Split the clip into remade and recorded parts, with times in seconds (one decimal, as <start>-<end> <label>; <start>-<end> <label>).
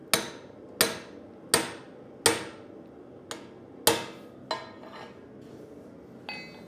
0.0-6.7 recorded